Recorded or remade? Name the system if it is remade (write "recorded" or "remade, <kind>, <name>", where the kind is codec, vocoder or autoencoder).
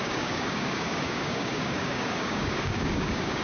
remade, codec, DAC